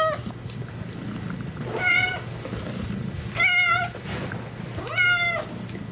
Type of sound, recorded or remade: recorded